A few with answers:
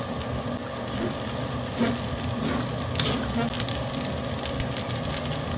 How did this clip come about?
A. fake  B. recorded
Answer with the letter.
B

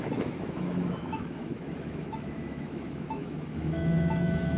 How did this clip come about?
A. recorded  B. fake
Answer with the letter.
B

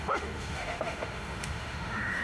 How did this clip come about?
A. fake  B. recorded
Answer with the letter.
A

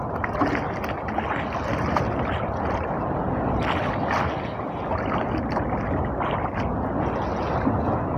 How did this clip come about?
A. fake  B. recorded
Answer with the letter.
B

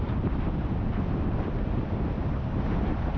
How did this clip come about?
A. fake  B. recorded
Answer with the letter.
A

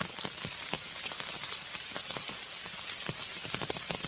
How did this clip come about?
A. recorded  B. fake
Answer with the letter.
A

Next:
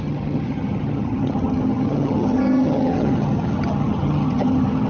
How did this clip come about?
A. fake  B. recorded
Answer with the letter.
A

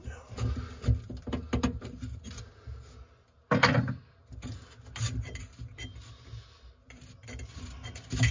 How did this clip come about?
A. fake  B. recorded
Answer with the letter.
B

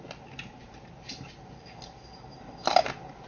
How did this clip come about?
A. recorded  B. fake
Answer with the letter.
A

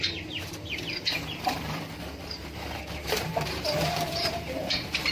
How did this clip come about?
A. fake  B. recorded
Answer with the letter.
A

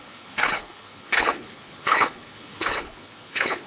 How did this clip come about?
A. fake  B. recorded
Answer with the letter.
A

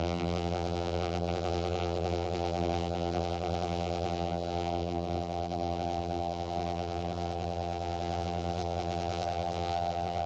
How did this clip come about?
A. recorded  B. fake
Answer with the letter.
B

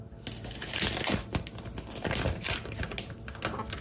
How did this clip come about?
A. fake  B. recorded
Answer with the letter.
B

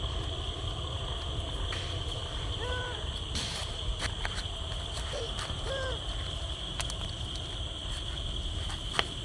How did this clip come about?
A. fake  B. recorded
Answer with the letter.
B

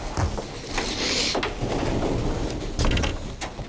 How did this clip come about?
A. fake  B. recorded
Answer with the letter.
B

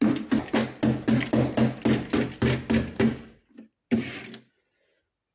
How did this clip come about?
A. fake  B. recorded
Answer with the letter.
B